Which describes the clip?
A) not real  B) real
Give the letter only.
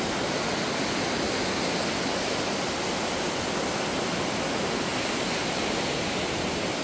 B